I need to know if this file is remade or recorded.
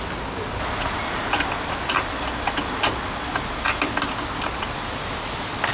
recorded